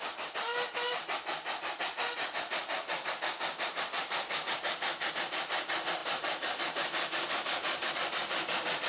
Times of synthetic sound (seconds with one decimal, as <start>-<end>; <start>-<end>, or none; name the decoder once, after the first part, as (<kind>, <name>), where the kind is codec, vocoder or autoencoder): none

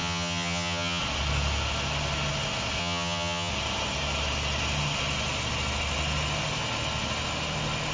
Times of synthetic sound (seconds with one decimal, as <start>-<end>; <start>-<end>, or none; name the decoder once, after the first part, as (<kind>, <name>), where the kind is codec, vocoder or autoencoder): 0.0-1.0 (vocoder, HiFi-GAN); 2.8-3.5

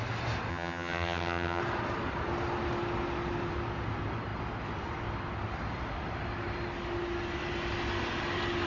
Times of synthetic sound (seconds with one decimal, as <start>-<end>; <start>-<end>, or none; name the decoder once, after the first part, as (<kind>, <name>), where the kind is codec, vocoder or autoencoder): 0.5-1.6 (vocoder, HiFi-GAN)

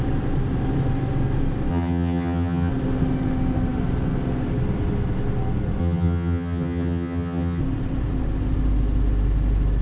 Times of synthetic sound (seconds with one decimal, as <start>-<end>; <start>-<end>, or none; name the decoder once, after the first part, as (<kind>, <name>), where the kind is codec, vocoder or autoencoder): 1.7-2.7 (vocoder, HiFi-GAN); 5.8-7.6

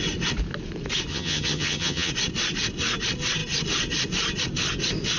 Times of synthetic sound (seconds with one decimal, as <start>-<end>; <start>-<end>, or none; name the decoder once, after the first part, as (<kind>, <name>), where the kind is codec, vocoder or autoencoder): 1.1-2.1 (vocoder, HiFi-GAN)

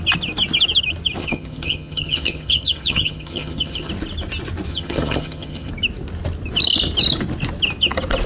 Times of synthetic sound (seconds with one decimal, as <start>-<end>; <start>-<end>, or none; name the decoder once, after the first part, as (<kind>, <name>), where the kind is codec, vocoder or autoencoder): 1.2-3.9 (vocoder, HiFi-GAN); 4.7-5.7

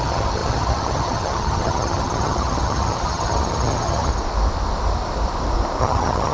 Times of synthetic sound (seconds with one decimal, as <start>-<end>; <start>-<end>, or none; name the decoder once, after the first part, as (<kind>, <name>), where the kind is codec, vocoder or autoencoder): 0.0-4.1 (vocoder, HiFi-GAN); 5.8-6.3